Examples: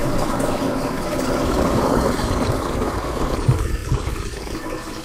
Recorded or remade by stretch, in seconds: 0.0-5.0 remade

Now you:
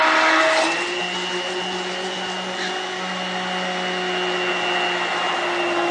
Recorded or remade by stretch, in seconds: 0.0-5.9 recorded

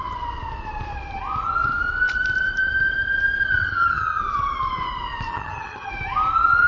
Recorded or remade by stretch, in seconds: 0.0-3.6 recorded; 3.6-4.2 remade; 4.2-5.3 recorded; 5.3-5.9 remade; 5.9-6.7 recorded